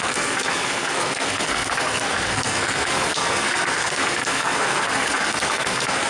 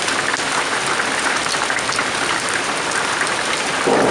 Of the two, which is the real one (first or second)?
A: second